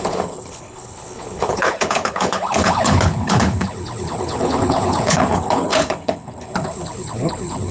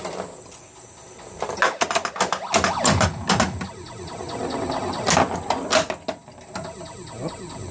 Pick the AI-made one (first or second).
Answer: first